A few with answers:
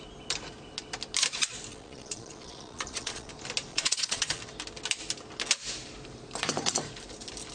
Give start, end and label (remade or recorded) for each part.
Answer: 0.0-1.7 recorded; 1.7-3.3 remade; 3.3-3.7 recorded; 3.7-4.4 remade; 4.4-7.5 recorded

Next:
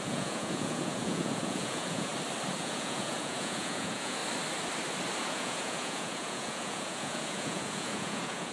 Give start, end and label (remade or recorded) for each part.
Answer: 0.0-2.1 remade; 2.1-2.6 recorded; 2.6-4.2 remade; 4.2-5.2 recorded; 5.2-8.5 remade

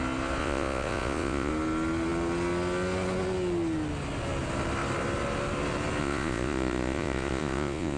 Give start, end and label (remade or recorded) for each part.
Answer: 0.0-0.4 recorded; 0.4-1.5 remade; 1.5-6.0 recorded; 6.0-8.0 remade